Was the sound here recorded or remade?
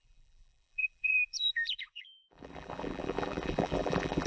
remade